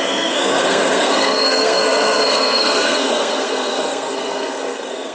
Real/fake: fake